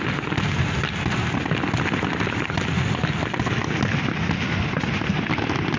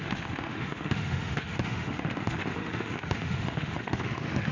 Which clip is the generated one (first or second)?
second